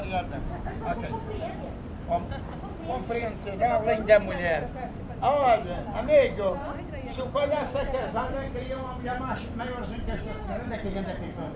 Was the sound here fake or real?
real